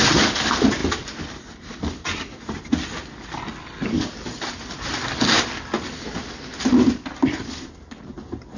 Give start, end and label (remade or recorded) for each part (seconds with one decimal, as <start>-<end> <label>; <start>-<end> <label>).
0.0-8.6 recorded